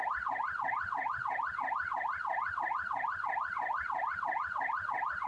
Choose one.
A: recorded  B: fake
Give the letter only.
A